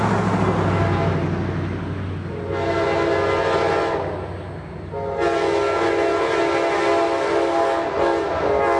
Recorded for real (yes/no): yes